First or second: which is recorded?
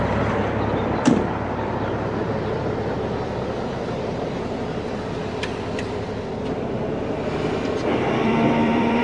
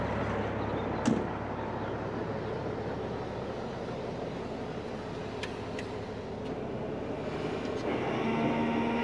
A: second